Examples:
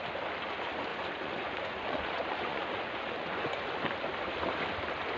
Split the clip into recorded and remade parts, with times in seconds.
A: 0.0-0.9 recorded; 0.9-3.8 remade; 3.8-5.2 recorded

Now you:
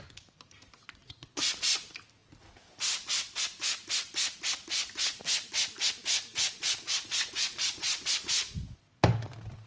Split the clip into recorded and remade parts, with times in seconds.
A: 0.0-1.0 recorded; 1.0-1.5 remade; 1.5-6.3 recorded; 6.3-8.1 remade; 8.1-9.7 recorded

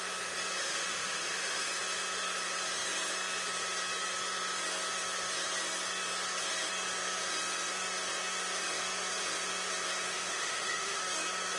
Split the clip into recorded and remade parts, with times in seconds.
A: 0.0-0.6 recorded; 0.6-1.7 remade; 1.7-10.1 recorded; 10.1-11.0 remade; 11.0-11.6 recorded

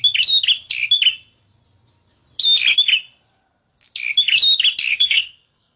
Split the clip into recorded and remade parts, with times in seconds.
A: 0.0-4.9 recorded; 4.9-5.8 remade